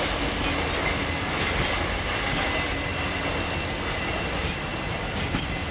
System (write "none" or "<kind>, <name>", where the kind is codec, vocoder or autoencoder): none